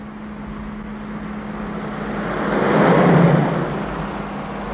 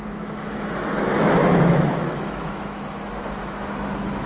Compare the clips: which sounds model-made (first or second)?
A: second